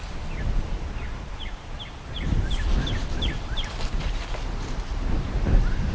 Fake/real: real